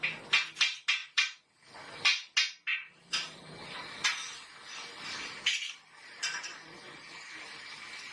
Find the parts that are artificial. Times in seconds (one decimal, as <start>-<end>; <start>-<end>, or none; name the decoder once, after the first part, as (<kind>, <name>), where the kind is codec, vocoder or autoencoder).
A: 1.0-1.8 (vocoder, BigVGAN v2); 2.7-3.9